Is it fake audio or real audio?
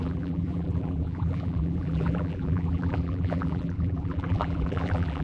fake